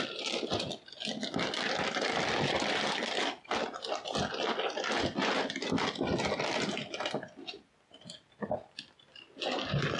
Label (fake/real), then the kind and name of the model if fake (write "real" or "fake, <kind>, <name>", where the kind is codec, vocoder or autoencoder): real